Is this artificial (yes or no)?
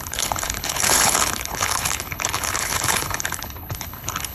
yes